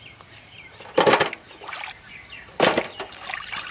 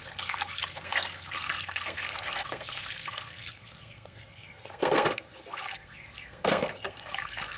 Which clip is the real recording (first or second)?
first